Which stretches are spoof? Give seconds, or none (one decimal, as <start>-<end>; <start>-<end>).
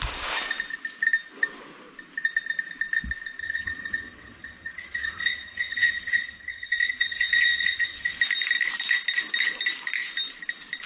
3.4-8.2